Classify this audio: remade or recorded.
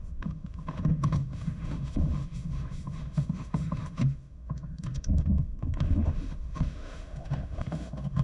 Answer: remade